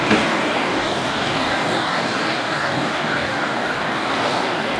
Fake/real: fake